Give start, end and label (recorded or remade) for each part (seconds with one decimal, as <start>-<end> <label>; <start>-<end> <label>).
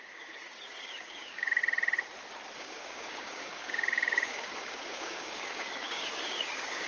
0.0-1.6 remade; 1.6-2.5 recorded; 2.5-6.9 remade